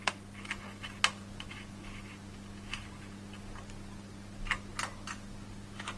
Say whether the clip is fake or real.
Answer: real